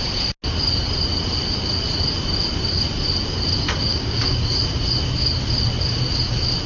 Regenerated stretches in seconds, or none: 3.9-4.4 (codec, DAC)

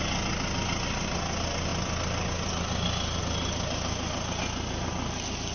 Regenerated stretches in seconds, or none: none

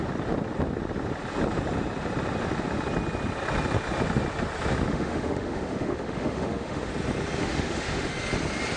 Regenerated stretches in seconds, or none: 4.9-6.9 (autoencoder, DAC-VAE); 7.4-8.1

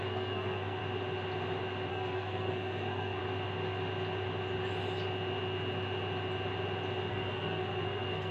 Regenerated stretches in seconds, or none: 0.0-0.8 (codec, SNAC); 1.9-3.2; 7.1-8.3